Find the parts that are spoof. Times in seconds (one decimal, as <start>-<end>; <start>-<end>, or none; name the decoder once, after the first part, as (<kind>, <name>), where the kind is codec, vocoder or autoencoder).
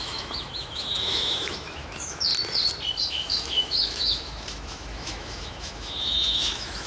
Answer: 0.0-2.3 (autoencoder, DAC-VAE); 3.1-6.9